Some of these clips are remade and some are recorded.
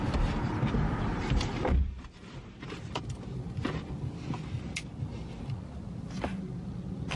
recorded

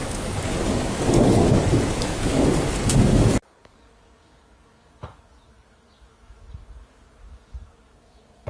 remade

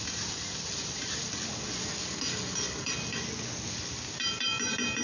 recorded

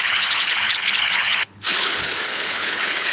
remade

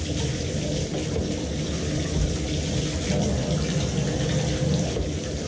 recorded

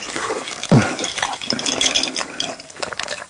remade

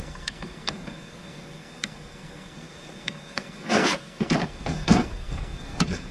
remade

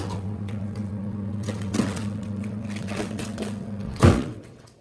remade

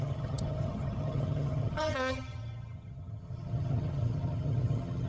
remade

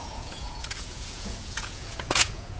remade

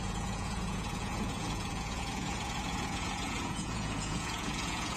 remade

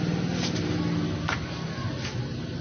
recorded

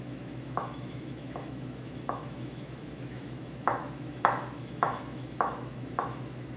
remade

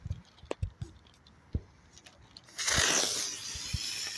recorded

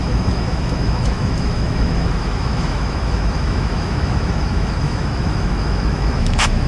remade